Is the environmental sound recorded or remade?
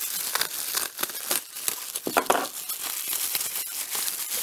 recorded